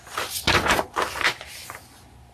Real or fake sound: real